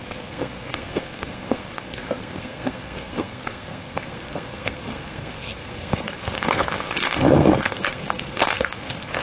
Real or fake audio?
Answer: fake